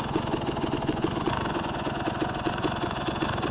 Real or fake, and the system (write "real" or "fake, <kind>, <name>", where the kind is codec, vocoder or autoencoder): fake, vocoder, Vocos